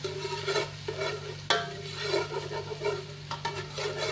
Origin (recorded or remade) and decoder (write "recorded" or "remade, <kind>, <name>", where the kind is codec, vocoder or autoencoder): recorded